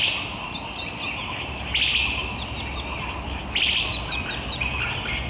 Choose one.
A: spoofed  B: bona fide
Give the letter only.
B